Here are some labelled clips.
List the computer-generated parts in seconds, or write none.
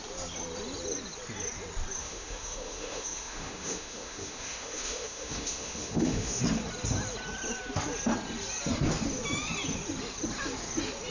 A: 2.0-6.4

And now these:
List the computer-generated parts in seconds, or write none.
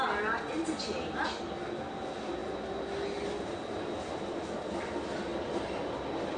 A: none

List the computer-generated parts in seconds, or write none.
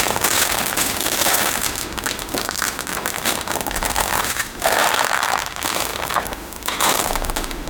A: 0.0-7.7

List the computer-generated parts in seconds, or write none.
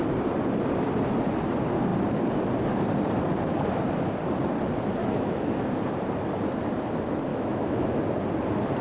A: 5.0-5.7; 7.3-8.0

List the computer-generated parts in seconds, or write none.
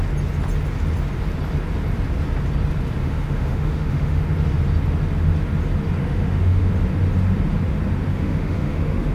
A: 3.0-4.2; 6.0-6.7; 8.1-9.1